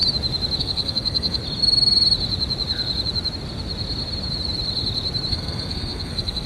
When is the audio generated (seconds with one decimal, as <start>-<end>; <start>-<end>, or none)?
0.6-1.4; 5.3-6.5